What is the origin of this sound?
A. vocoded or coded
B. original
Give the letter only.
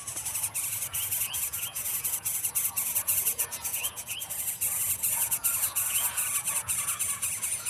A